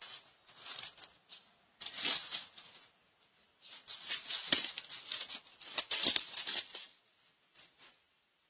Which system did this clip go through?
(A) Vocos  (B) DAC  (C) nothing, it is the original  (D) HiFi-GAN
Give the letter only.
C